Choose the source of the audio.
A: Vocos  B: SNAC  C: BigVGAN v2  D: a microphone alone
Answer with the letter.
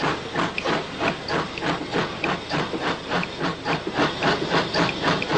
D